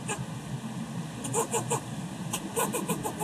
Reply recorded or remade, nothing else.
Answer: recorded